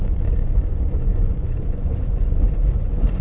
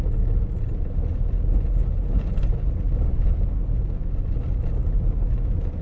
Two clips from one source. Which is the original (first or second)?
second